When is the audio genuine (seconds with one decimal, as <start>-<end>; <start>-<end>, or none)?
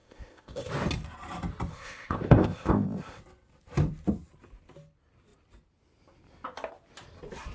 0.7-1.7; 3.2-7.5